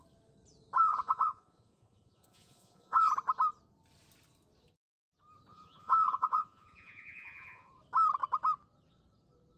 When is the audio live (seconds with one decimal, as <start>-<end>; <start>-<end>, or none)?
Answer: 0.0-0.8; 3.1-5.5; 7.7-9.6